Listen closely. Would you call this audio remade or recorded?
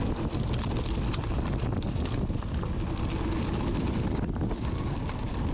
recorded